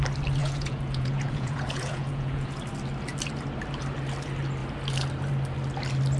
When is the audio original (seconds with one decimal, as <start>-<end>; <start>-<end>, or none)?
0.0-0.4; 2.6-6.2